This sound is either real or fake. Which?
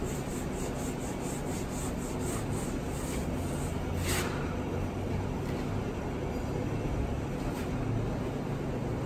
real